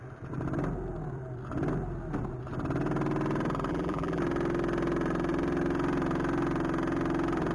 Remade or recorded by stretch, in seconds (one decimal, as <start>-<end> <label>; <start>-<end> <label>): 0.0-3.7 recorded; 3.7-4.2 remade; 4.2-7.5 recorded